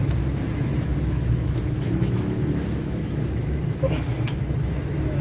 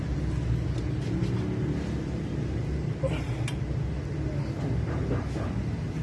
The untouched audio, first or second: second